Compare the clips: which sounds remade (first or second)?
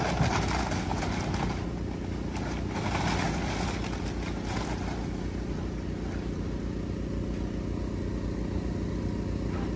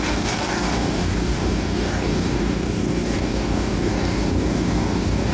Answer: second